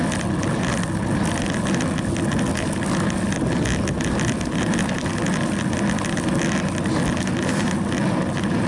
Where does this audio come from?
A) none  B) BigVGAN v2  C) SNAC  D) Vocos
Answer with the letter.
A